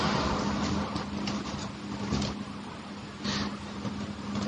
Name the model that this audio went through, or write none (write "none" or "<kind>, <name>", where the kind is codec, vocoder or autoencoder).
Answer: none